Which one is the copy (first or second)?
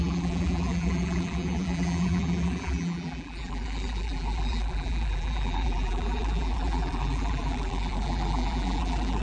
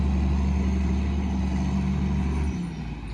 first